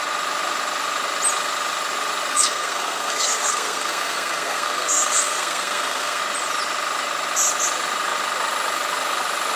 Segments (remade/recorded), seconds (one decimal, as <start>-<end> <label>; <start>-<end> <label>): 0.0-2.3 recorded; 2.3-6.2 remade; 6.2-9.6 recorded